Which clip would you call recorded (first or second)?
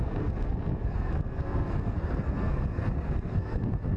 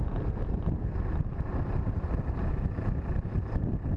second